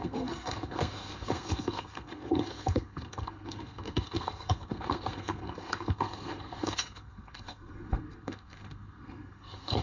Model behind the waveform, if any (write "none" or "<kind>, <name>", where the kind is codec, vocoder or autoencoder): codec, SNAC